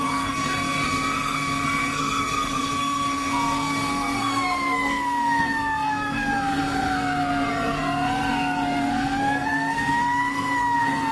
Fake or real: fake